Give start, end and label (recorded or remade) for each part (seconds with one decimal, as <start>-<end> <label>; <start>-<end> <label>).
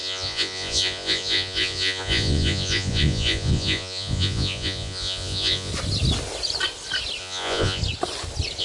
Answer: 0.0-5.7 remade; 5.7-7.2 recorded; 7.2-7.8 remade; 7.8-8.6 recorded